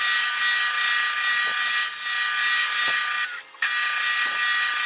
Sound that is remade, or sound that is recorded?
recorded